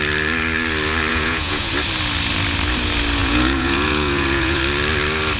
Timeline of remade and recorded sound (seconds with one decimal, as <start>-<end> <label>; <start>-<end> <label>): 0.0-1.1 recorded; 1.1-1.7 remade; 1.7-3.2 recorded; 3.2-4.6 remade; 4.6-5.4 recorded